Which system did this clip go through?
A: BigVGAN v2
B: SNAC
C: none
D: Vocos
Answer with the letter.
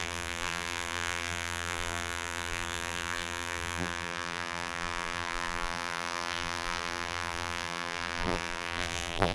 A